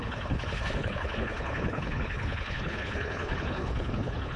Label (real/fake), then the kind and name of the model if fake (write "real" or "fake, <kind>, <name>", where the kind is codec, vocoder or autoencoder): fake, codec, HILCodec